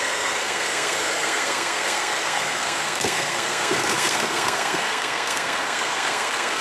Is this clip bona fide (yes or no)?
no